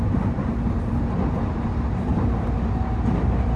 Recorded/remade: recorded